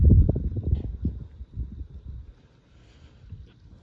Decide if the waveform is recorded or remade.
recorded